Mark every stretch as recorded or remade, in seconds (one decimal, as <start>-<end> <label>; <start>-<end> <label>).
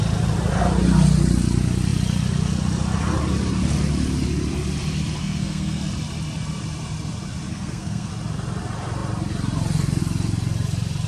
0.0-5.2 recorded; 5.2-5.8 remade; 5.8-7.5 recorded; 7.5-8.1 remade; 8.1-11.1 recorded